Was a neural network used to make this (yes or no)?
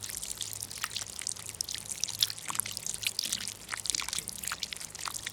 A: no